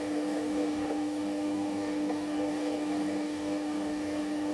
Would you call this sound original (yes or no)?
no